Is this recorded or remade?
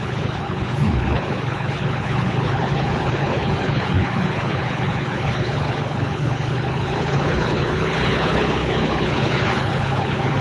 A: remade